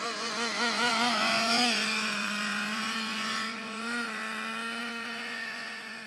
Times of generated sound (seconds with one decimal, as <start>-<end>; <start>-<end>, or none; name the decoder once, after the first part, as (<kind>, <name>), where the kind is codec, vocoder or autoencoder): 0.0-4.2 (vocoder, Vocos); 4.8-6.1